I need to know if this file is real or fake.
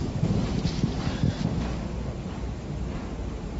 fake